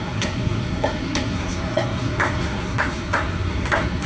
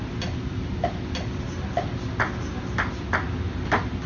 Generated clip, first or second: first